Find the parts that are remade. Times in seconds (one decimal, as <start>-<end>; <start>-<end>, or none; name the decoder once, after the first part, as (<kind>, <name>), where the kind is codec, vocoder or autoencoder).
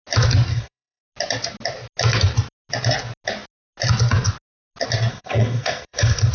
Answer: 0.5-1.0 (codec, SNAC); 5.1-6.3